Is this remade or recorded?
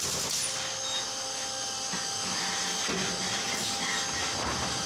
recorded